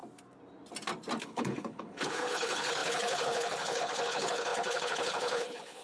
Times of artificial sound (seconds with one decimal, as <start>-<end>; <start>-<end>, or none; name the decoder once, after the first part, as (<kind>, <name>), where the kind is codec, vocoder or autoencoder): 1.2-5.8 (codec, HILCodec)